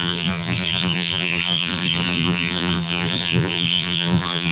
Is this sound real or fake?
fake